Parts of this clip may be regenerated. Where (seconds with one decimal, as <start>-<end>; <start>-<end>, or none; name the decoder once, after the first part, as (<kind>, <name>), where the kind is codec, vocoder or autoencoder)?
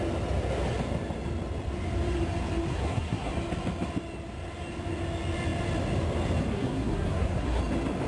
2.7-3.3 (codec, SNAC); 6.5-7.6